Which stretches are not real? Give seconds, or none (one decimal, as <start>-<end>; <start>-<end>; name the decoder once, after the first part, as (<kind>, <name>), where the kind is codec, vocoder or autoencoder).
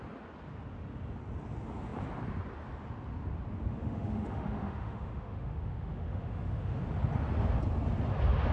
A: 3.7-6.8 (autoencoder, DAC-VAE)